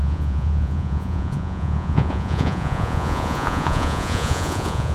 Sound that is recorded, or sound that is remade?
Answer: remade